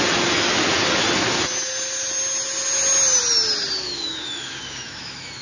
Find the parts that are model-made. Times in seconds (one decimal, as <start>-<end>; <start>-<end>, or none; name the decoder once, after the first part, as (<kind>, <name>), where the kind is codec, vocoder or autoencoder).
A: 3.8-5.4 (autoencoder, DAC-VAE)